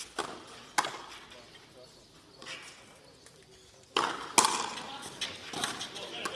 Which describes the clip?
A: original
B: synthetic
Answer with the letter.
A